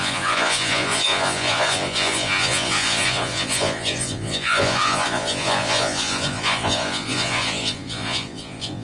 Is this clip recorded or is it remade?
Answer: remade